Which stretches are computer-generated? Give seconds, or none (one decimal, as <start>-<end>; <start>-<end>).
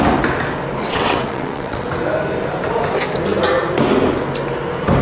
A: 0.8-1.9